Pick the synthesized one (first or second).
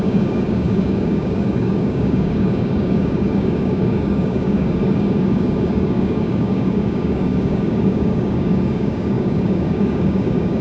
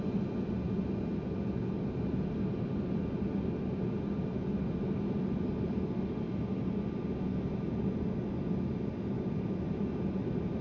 first